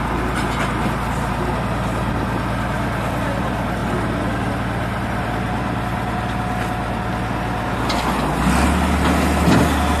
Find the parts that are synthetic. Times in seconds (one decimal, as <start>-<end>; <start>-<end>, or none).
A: none